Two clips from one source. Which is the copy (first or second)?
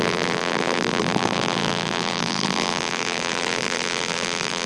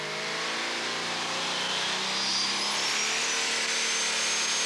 first